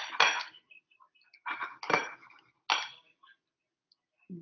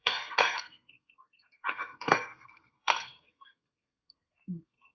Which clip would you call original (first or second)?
first